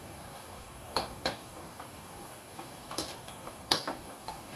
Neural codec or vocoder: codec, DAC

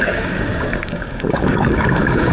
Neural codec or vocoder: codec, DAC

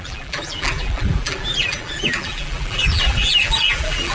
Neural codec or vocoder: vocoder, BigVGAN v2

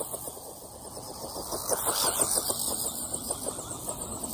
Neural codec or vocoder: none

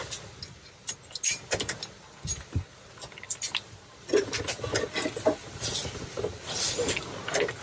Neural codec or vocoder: none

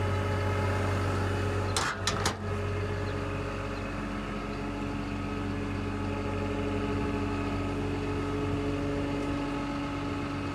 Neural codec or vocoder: none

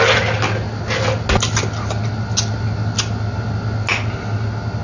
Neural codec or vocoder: none